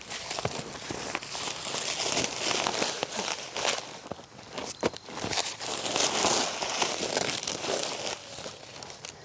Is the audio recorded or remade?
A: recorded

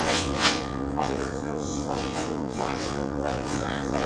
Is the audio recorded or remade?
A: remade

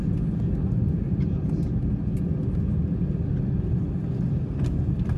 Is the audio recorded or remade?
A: recorded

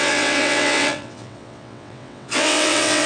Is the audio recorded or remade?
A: remade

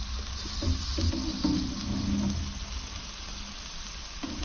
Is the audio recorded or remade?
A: recorded